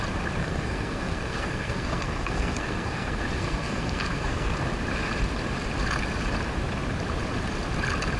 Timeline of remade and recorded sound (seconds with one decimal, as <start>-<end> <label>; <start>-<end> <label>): 0.0-0.4 recorded; 0.4-4.5 remade; 4.5-8.2 recorded